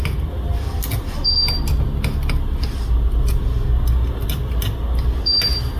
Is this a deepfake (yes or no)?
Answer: no